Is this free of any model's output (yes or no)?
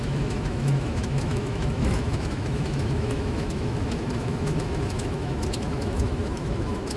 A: no